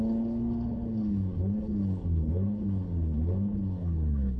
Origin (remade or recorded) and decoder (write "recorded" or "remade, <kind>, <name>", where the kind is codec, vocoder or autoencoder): remade, codec, HILCodec